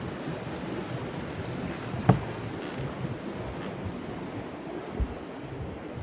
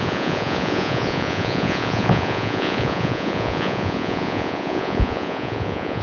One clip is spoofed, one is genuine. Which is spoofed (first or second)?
second